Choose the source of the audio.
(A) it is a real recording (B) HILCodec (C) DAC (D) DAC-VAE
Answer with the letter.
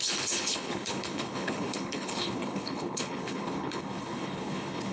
B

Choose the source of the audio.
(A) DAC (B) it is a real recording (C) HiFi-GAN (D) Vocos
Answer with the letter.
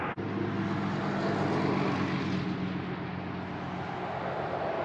B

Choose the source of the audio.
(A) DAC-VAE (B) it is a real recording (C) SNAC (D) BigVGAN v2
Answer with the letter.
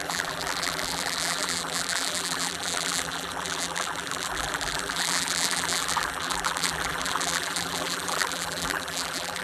D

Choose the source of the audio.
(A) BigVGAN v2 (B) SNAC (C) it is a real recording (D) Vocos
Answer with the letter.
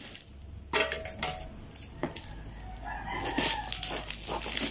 C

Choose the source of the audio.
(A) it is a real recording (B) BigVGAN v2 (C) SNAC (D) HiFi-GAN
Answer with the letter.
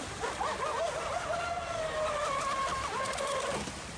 A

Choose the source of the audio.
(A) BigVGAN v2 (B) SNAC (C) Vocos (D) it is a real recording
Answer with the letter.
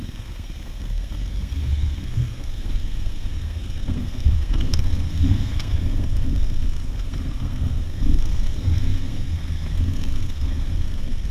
B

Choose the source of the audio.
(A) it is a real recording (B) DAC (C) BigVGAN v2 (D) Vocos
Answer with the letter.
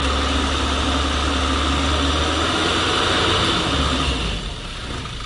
A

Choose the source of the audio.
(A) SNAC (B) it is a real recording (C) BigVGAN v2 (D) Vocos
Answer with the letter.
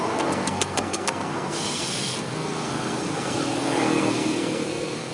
A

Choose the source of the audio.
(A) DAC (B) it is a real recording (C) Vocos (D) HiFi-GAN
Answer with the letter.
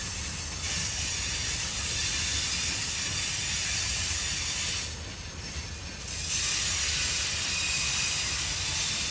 B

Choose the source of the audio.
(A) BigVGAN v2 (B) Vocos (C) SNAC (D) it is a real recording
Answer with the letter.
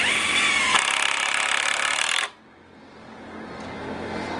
D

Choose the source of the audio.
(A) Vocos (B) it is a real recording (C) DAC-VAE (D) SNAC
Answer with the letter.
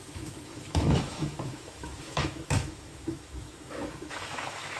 C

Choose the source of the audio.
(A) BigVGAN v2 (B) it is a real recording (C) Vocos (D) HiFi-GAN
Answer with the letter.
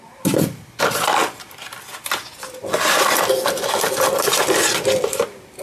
B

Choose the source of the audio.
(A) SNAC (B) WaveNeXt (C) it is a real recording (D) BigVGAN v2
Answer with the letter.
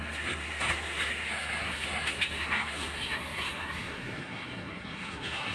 A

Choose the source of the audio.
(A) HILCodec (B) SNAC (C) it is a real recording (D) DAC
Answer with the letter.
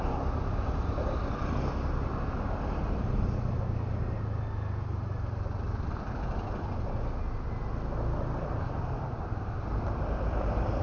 C